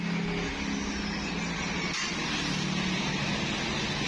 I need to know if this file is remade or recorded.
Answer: recorded